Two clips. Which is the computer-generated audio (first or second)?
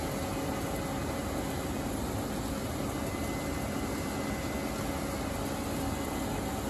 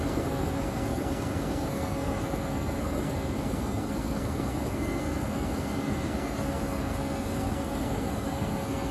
second